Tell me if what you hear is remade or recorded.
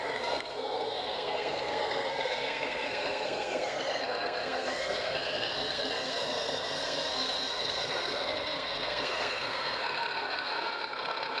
remade